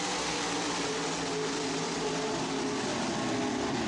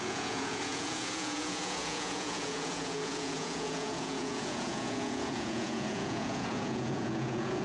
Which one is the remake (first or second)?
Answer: second